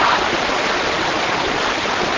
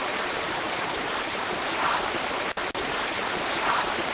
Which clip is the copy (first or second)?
second